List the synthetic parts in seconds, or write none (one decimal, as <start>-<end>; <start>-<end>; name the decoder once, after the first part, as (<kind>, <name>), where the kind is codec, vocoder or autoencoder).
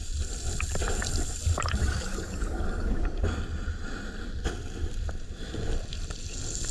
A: 1.8-3.2 (codec, DAC)